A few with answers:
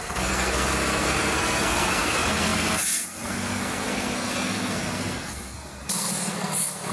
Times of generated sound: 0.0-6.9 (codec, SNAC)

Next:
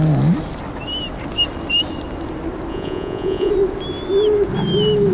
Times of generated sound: 2.7-3.5 (vocoder, Vocos)

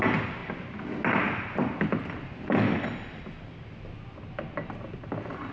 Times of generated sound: none